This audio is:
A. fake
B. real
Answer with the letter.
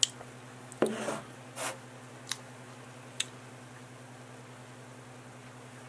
B